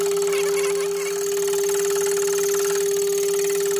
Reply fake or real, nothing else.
real